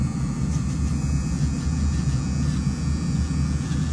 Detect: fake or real real